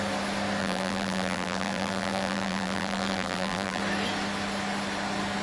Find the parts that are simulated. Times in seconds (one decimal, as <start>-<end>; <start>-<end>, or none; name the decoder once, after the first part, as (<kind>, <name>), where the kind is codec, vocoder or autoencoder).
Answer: 0.6-3.8 (vocoder, BigVGAN v2)